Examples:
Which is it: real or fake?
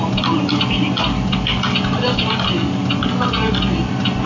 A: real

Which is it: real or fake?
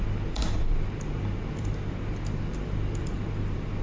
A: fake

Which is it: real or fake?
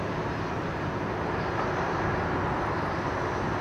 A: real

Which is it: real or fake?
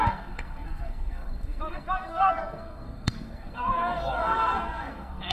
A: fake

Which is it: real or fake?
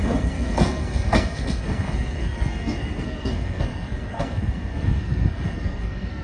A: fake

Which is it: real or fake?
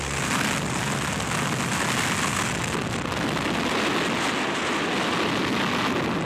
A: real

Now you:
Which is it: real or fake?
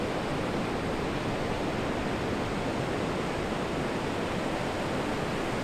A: real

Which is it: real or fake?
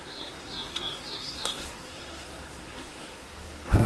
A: fake